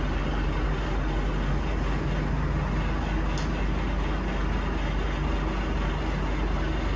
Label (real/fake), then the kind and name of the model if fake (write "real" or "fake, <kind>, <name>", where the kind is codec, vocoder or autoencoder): real